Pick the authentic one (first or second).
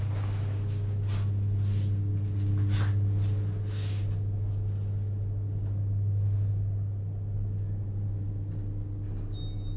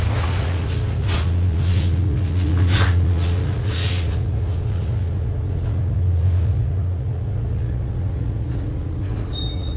first